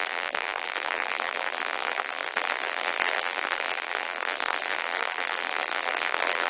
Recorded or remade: remade